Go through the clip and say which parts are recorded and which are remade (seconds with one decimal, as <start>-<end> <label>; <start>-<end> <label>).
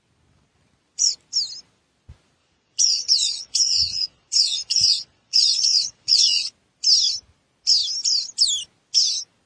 0.0-2.4 recorded; 2.4-6.5 remade; 6.5-9.5 recorded